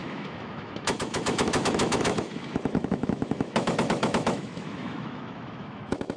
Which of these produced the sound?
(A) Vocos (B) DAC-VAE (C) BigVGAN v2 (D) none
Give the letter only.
B